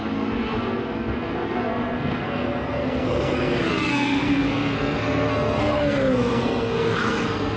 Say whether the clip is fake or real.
fake